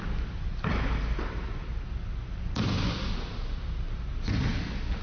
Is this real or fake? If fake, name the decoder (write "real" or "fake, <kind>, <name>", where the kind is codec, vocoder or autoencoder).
real